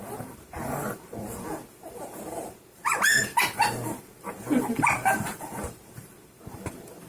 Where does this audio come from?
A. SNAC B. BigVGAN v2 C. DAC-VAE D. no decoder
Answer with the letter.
B